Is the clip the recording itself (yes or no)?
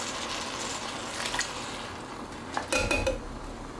yes